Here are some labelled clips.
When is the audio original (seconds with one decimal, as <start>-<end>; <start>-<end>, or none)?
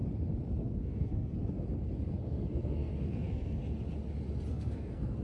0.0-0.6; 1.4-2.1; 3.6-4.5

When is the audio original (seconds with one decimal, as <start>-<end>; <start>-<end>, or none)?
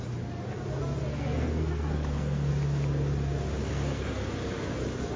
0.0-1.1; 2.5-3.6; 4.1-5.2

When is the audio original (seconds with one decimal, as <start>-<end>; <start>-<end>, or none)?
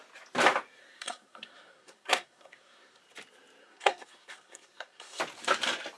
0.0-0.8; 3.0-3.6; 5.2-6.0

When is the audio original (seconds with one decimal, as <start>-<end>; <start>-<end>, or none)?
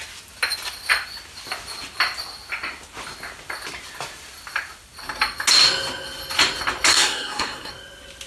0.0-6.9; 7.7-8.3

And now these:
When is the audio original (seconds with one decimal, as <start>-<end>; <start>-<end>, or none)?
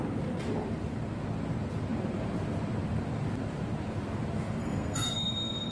0.0-4.6